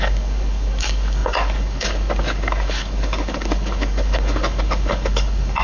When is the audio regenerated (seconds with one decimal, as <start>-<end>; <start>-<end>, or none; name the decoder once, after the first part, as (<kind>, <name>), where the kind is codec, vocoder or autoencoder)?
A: 0.0-5.6 (codec, DAC)